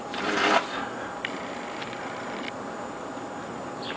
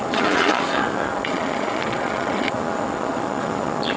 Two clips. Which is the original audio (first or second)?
first